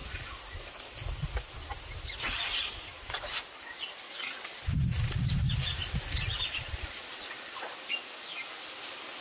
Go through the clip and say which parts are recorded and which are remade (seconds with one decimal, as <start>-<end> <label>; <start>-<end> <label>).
0.0-2.6 recorded; 2.6-7.8 remade; 7.8-9.2 recorded